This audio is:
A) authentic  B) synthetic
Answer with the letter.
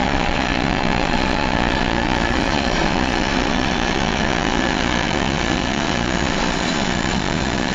B